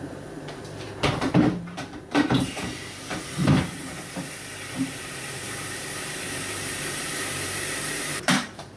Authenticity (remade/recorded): remade